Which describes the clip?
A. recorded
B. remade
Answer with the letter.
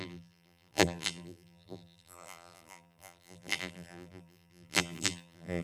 B